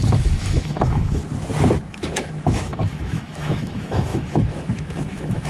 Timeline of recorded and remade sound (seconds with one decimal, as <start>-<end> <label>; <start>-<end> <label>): 0.0-1.2 remade; 1.2-1.8 recorded; 1.8-5.5 remade